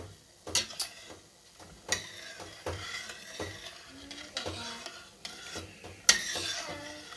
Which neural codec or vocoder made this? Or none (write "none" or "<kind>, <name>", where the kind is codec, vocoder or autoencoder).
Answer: none